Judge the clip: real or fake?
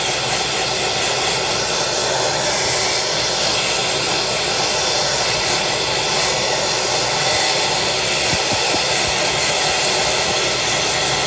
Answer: real